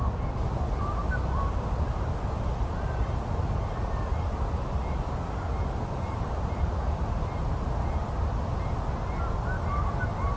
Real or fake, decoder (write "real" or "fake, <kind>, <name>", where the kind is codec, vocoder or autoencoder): real